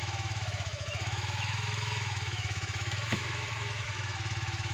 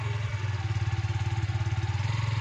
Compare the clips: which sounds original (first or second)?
second